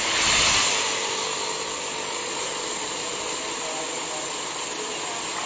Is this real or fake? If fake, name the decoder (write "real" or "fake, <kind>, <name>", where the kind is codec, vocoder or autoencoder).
real